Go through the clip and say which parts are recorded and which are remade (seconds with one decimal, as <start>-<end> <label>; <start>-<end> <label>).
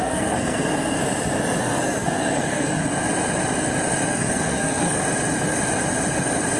0.0-1.0 remade; 1.0-1.6 recorded; 1.6-2.8 remade; 2.8-4.1 recorded; 4.1-5.0 remade; 5.0-6.6 recorded